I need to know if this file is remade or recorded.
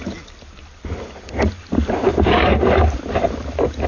recorded